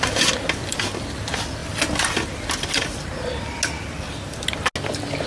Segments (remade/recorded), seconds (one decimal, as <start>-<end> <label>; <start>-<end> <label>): 0.0-1.6 recorded; 1.6-2.9 remade; 2.9-5.3 recorded